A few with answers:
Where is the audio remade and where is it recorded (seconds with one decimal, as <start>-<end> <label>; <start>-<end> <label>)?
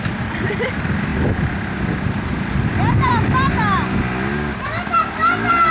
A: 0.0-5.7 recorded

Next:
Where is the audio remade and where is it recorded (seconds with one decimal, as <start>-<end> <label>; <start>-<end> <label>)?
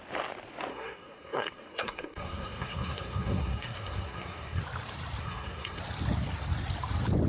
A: 0.0-0.7 recorded; 0.7-4.6 remade; 4.6-5.2 recorded; 5.2-5.8 remade; 5.8-7.3 recorded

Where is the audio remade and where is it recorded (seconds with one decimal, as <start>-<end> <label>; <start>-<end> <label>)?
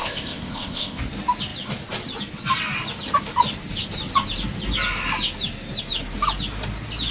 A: 0.0-1.0 remade; 1.0-7.1 recorded